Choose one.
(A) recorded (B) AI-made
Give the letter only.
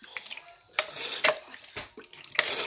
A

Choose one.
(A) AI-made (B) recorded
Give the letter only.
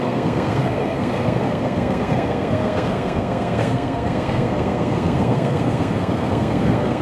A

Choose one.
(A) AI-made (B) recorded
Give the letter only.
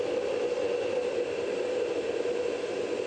B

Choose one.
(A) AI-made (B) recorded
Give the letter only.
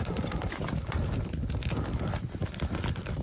B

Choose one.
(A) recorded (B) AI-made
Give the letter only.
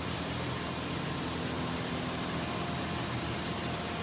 A